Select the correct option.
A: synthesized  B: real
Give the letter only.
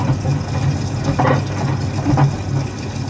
B